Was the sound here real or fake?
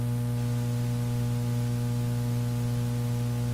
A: real